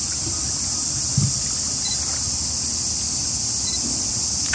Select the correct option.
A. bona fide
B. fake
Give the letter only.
A